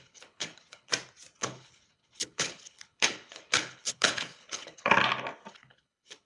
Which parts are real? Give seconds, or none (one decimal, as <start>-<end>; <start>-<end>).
0.9-1.4; 4.9-5.5